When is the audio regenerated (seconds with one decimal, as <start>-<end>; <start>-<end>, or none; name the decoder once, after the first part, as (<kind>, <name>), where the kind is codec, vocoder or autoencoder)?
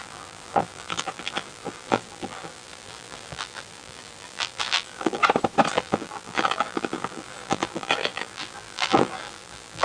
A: 0.0-5.2 (vocoder, BigVGAN v2); 5.7-9.8